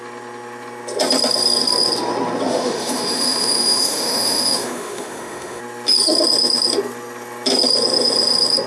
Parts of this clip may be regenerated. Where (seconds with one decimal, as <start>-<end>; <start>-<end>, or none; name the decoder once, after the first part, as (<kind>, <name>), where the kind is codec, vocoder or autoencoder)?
2.5-5.6 (autoencoder, DAC-VAE)